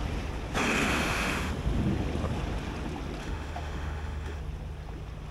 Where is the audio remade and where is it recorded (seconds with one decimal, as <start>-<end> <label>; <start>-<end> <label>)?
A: 0.0-0.8 recorded; 0.8-1.5 remade; 1.5-3.2 recorded; 3.2-4.4 remade; 4.4-5.3 recorded